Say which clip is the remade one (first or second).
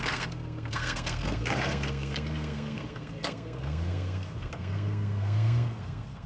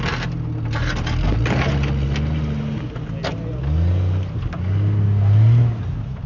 first